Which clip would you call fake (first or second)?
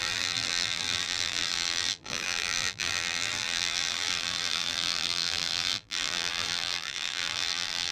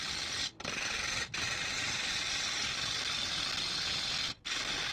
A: first